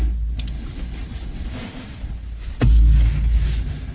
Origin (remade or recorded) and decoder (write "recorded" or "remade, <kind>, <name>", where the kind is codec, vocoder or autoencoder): recorded